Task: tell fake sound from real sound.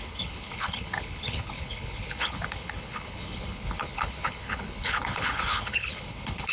fake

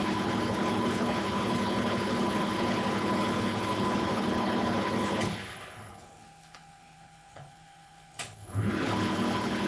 fake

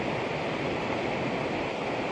real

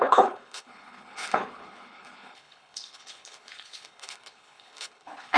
fake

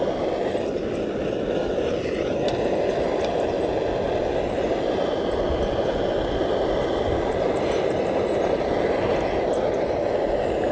real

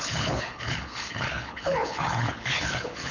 fake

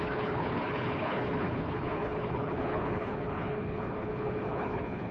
fake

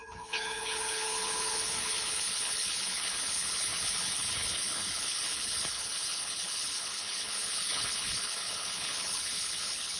fake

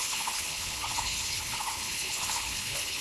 fake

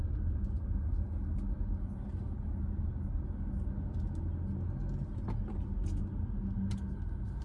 real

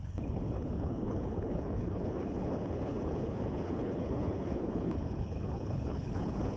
fake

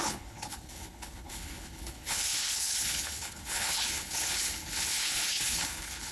fake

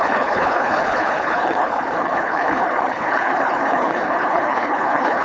fake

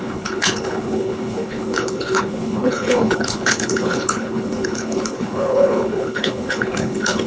fake